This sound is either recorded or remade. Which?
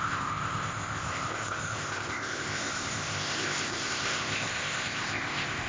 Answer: remade